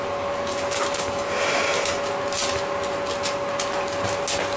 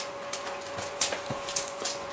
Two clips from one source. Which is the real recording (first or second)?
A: first